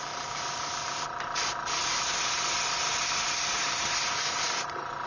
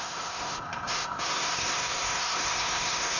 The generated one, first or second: second